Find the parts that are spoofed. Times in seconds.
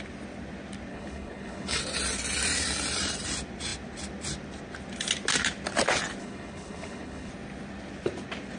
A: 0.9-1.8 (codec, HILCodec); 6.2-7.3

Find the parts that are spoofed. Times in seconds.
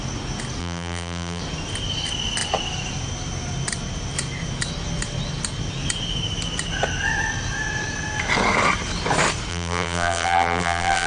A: 0.6-1.4 (vocoder, BigVGAN v2); 9.5-11.1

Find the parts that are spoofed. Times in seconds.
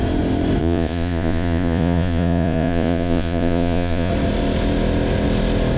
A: 0.6-4.1 (vocoder, Vocos)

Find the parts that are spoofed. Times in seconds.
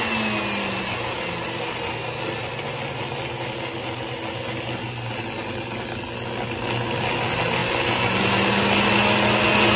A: none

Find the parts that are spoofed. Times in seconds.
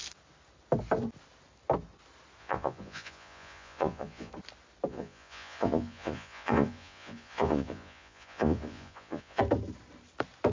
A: 2.4-4.3 (vocoder, Vocos); 4.9-9.4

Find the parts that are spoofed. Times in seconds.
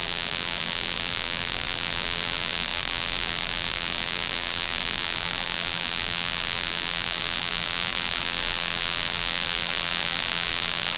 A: 0.0-11.0 (vocoder, BigVGAN v2)